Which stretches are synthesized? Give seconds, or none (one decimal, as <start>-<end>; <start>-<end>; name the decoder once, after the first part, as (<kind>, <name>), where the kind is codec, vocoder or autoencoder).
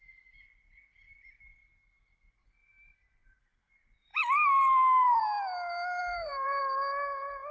2.6-5.2 (vocoder, BigVGAN v2); 6.0-6.6